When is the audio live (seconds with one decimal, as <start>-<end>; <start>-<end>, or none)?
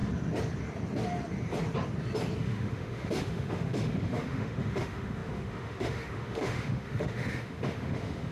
0.0-2.4